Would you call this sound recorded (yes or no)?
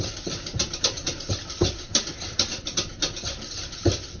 yes